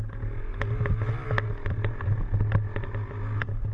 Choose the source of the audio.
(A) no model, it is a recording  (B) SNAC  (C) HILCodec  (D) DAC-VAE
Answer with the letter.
A